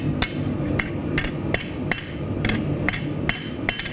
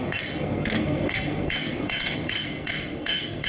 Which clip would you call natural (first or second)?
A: first